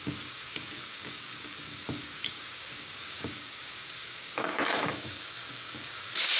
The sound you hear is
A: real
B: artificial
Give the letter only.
B